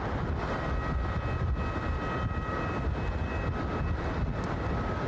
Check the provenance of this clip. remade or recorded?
recorded